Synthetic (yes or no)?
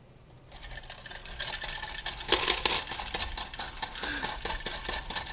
no